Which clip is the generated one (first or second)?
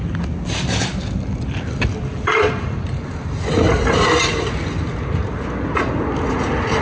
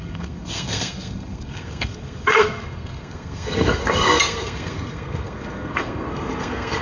second